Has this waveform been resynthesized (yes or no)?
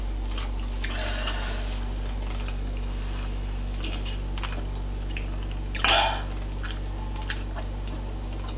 no